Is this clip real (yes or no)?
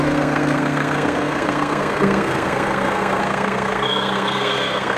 no